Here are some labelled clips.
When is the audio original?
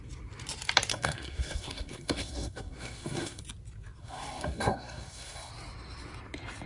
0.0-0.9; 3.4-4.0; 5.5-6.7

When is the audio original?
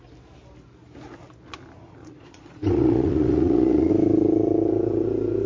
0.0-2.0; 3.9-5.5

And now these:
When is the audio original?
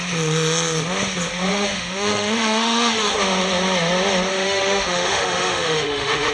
0.0-1.5; 3.1-4.3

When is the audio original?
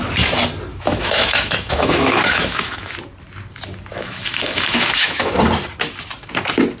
0.0-0.7; 2.9-3.9; 5.3-6.8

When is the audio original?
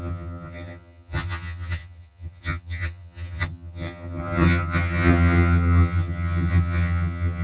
none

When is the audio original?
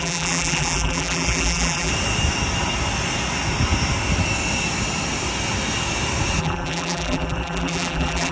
1.9-6.4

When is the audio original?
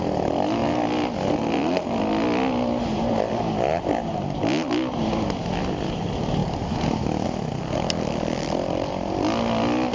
0.0-9.9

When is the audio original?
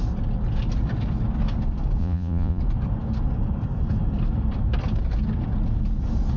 0.0-2.0; 2.6-6.4